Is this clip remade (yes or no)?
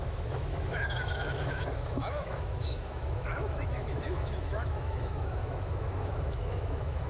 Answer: yes